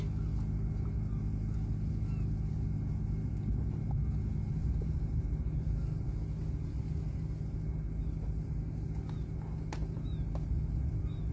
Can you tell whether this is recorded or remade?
recorded